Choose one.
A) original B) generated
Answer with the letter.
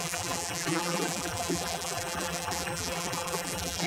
B